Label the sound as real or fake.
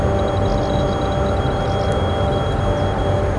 real